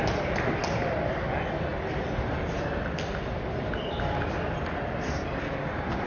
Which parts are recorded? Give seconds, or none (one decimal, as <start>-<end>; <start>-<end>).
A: 0.0-6.1